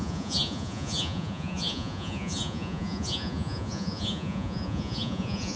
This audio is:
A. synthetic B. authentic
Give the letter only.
A